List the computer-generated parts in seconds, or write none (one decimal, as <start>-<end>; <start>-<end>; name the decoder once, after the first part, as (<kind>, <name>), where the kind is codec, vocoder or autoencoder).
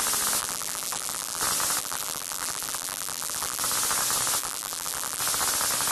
0.4-1.4 (vocoder, BigVGAN v2); 1.8-3.6; 4.4-5.2